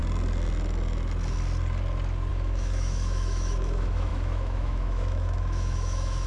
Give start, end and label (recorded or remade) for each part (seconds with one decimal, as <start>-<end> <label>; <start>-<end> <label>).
0.0-2.3 recorded; 2.3-6.3 remade